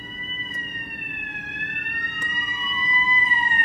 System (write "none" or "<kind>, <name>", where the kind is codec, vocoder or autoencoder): none